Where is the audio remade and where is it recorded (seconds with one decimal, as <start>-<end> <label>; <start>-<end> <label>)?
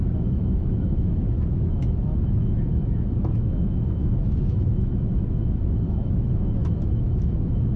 0.0-7.8 remade